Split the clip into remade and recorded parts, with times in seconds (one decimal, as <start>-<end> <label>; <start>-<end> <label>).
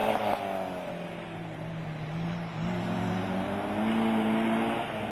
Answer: 0.0-3.1 remade; 3.1-5.1 recorded